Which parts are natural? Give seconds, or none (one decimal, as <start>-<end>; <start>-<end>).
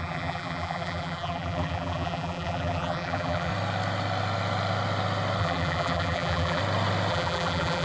3.5-5.4; 6.6-7.1